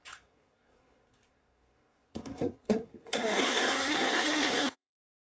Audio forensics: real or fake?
fake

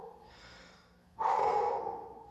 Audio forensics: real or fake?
fake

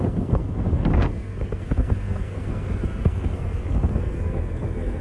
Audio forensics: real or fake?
fake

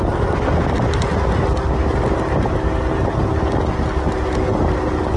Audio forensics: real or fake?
real